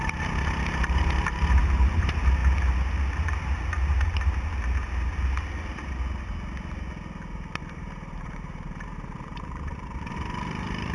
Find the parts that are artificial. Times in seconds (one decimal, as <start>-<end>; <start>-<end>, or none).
0.0-2.4; 7.6-10.9